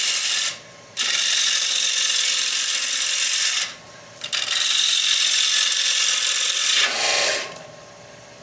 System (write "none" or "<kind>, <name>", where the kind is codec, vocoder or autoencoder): vocoder, BigVGAN v2